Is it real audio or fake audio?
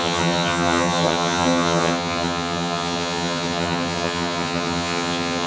fake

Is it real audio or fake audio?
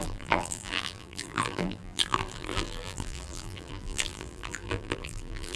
fake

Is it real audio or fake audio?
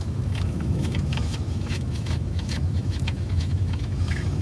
fake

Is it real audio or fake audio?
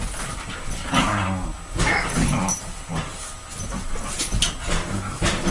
real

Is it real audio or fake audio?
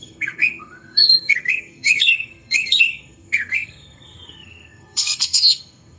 fake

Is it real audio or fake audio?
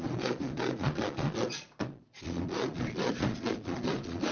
fake